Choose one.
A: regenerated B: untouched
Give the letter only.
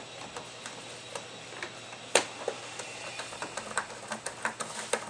B